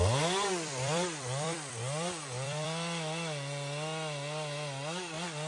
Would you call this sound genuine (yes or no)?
no